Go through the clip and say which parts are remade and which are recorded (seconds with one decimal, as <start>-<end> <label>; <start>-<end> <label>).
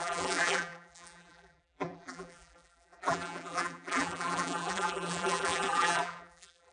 0.0-6.7 remade